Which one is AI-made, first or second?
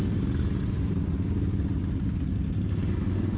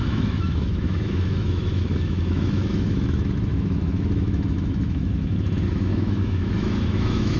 second